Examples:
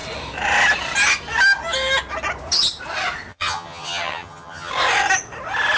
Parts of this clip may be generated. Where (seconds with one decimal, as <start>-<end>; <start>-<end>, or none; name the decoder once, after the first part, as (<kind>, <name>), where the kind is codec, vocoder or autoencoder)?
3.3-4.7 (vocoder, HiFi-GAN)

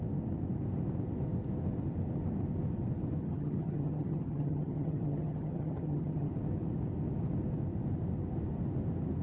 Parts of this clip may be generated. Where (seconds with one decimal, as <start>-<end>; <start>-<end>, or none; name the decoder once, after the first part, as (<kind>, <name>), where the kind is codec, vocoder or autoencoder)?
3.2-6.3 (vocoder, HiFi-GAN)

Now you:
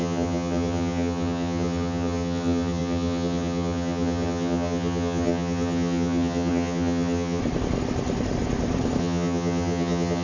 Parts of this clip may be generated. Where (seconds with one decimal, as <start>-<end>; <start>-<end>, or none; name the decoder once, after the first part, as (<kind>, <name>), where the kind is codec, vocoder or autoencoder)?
0.0-7.4 (vocoder, HiFi-GAN); 9.0-10.2

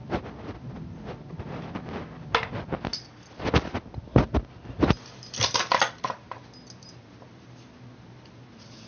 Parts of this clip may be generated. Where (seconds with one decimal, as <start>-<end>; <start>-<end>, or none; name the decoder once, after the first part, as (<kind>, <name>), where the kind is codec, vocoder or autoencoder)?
none

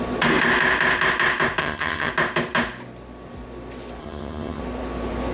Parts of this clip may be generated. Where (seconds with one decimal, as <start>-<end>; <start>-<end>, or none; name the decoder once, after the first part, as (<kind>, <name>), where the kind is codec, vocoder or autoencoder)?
1.6-2.1 (vocoder, HiFi-GAN); 4.0-4.6